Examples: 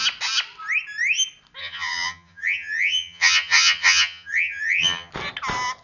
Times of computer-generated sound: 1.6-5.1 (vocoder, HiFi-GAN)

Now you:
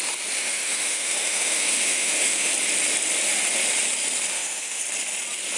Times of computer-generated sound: 0.4-2.5 (autoencoder, DAC-VAE); 4.3-4.8

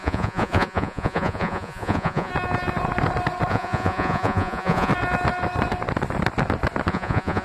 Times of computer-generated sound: 0.0-2.3 (vocoder, Vocos); 3.5-4.9; 6.9-7.4

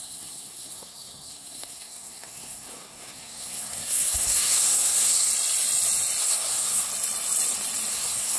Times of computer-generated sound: 0.0-5.3 (codec, SNAC); 6.2-6.9; 7.9-8.4

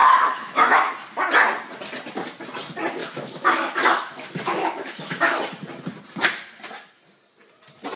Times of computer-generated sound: 0.0-0.9 (autoencoder, DAC-VAE); 3.0-5.4

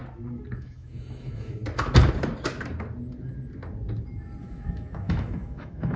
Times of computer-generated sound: 0.6-1.6 (autoencoder, DAC-VAE); 4.4-6.0

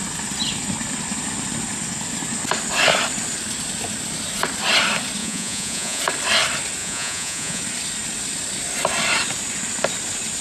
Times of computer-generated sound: 5.2-6.0 (vocoder, Vocos); 6.8-7.6

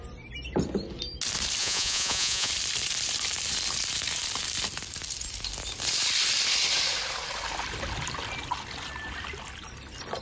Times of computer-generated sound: 1.6-2.5 (vocoder, Vocos)